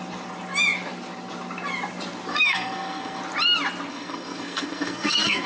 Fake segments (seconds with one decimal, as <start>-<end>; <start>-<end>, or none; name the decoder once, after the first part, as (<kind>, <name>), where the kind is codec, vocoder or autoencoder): 2.3-3.2 (codec, SNAC); 3.9-5.5